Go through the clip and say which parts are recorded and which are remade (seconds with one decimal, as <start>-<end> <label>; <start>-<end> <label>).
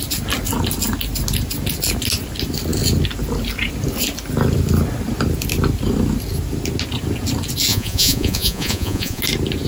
0.0-7.7 recorded; 7.7-9.2 remade; 9.2-9.7 recorded